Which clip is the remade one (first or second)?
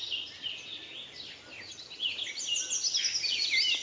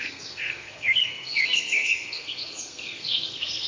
second